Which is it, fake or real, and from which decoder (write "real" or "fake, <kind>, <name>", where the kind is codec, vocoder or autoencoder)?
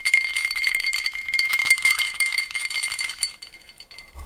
fake, autoencoder, DAC-VAE